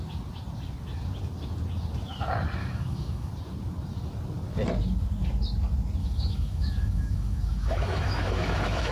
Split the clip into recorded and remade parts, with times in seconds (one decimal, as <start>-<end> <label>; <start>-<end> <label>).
0.0-2.6 recorded; 2.6-3.3 remade; 3.3-6.0 recorded; 6.0-8.9 remade